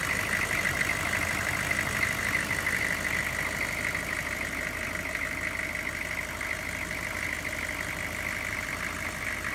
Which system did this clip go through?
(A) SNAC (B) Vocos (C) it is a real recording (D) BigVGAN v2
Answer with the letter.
C